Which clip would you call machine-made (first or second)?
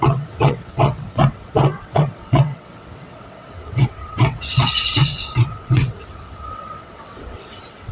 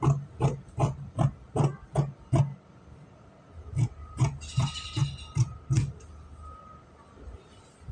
first